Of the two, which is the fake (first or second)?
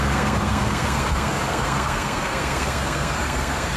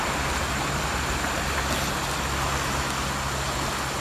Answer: first